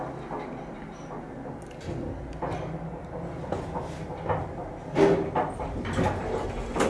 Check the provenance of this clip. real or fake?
real